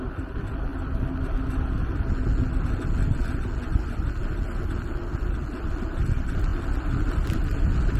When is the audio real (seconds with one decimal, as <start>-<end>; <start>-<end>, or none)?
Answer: 0.0-8.0